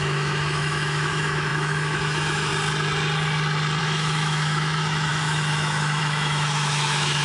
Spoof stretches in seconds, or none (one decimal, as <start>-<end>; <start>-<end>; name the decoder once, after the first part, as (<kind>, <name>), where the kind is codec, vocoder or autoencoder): 0.0-2.5 (autoencoder, DAC-VAE); 3.8-7.2

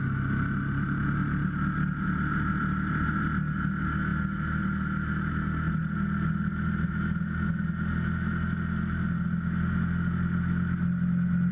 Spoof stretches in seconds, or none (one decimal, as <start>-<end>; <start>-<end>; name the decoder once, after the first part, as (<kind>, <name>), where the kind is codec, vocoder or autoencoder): none

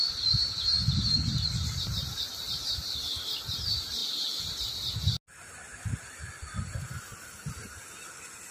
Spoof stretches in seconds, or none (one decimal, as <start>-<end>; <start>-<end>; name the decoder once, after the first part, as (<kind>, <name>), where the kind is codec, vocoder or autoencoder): none

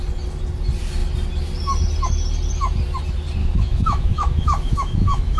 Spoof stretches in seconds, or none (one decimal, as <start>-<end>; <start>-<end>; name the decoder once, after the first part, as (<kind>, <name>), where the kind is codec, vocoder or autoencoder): 3.4-5.4 (autoencoder, DAC-VAE)

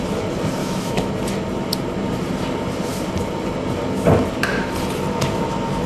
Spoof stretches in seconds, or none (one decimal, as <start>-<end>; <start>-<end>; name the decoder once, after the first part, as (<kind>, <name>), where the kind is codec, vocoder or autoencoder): 0.6-1.1 (autoencoder, DAC-VAE)

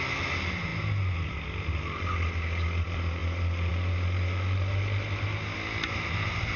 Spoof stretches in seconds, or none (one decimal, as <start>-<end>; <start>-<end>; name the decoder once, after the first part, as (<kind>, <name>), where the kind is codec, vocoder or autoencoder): none

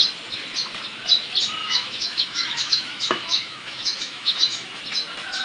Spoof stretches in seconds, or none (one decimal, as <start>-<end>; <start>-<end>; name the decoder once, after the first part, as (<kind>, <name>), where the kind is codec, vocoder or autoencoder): 1.6-4.8 (autoencoder, DAC-VAE)